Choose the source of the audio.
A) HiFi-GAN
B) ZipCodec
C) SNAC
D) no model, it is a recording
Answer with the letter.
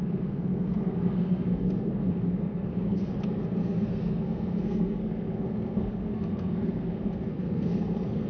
C